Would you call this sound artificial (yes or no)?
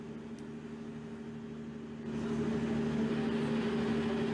no